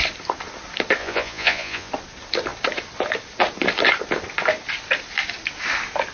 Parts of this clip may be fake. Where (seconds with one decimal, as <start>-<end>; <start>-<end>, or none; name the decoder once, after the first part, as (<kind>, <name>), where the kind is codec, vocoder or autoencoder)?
1.0-1.9 (vocoder, Vocos)